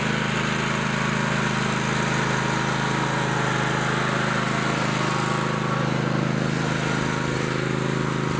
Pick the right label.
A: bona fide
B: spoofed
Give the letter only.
A